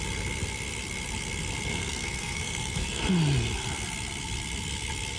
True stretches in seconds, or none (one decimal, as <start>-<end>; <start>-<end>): 0.0-1.7; 3.1-5.2